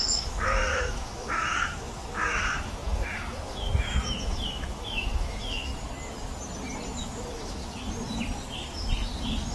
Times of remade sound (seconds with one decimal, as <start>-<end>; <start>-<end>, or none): 0.0-5.7; 7.0-7.6

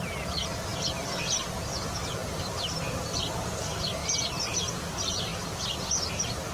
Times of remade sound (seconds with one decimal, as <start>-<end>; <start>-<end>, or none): none